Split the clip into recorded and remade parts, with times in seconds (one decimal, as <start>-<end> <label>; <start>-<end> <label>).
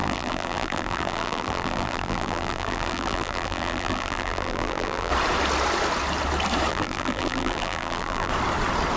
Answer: 0.0-5.1 remade; 5.1-6.7 recorded; 6.7-8.3 remade; 8.3-9.0 recorded